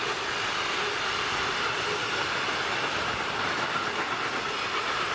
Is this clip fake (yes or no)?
no